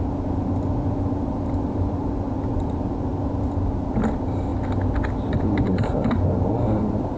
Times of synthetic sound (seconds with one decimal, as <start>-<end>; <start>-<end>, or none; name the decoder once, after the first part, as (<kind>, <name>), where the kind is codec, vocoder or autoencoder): 0.0-3.1 (vocoder, BigVGAN v2); 4.1-4.5; 5.4-7.2